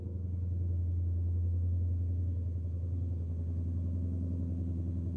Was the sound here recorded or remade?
recorded